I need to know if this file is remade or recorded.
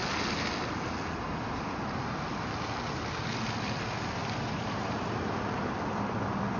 recorded